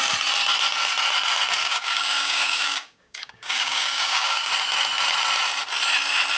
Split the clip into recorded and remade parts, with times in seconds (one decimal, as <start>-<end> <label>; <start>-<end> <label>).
0.0-1.6 recorded; 1.6-4.5 remade; 4.5-6.4 recorded